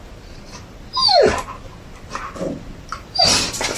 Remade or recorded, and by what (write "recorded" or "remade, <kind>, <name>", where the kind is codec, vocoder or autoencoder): remade, vocoder, BigVGAN v2